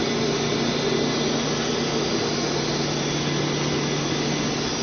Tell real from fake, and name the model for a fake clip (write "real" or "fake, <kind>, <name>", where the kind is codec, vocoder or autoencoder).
real